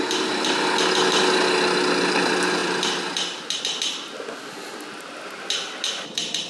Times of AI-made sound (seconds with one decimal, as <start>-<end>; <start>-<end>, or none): none